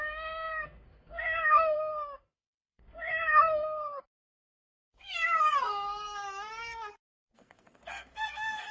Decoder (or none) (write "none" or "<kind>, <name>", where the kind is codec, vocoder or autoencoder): codec, SNAC